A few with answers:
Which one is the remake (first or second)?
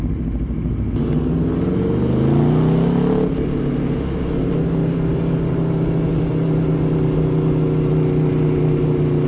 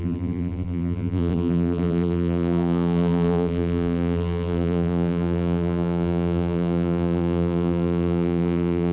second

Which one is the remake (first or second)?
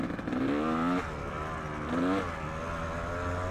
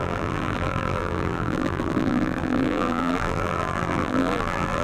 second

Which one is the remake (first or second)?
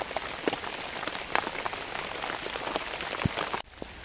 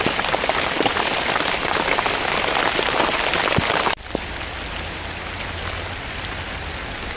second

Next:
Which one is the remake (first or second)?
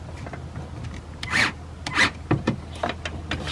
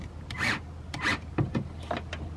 second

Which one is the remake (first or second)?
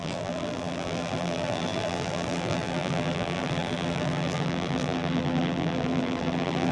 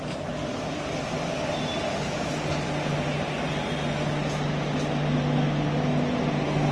first